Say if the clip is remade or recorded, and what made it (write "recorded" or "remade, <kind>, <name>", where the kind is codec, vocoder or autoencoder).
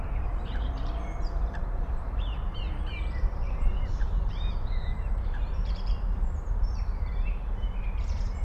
remade, vocoder, BigVGAN v2